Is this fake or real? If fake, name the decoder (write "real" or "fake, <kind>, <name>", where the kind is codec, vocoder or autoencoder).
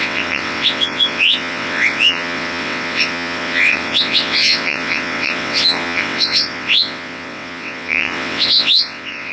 fake, vocoder, WaveNeXt